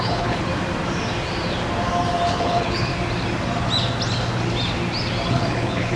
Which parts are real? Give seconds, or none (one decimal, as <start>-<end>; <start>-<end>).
0.5-2.3; 2.9-5.3